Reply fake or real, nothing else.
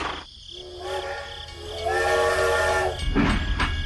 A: real